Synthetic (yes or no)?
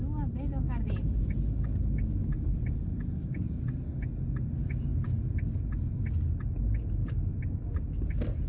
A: no